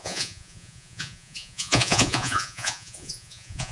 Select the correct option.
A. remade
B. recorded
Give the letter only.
A